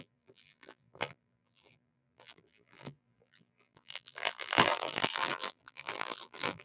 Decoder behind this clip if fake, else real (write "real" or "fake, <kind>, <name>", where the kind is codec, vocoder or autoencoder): fake, vocoder, BigVGAN v2